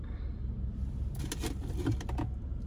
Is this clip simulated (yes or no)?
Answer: no